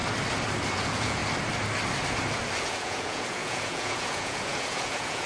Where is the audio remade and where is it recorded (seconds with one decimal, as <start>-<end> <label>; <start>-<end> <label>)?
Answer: 0.0-0.7 recorded; 0.7-1.2 remade; 1.2-2.6 recorded; 2.6-5.3 remade